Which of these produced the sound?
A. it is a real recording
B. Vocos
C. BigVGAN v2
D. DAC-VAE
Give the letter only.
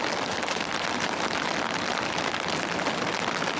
A